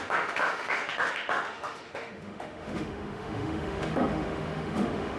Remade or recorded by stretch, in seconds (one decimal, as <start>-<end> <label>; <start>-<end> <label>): 0.0-5.2 remade